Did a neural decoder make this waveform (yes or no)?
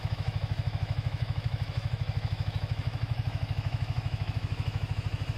yes